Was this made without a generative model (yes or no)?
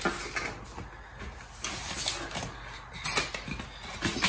yes